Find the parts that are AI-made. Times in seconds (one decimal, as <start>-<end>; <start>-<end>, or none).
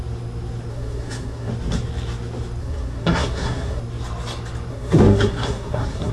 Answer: 0.7-1.5; 2.6-3.8; 4.7-6.1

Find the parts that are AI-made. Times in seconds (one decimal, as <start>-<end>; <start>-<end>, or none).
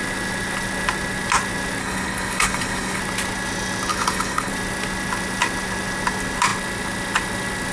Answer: 1.8-3.0; 3.9-4.5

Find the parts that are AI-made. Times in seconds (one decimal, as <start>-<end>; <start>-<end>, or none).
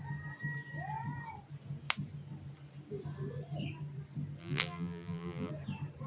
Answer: 4.4-5.5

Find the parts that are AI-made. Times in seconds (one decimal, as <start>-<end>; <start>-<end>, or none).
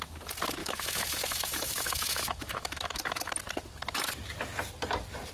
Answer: 0.6-3.3